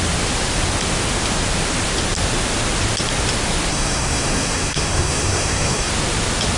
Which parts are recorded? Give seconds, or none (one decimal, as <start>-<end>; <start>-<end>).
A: 0.0-3.7; 5.9-6.6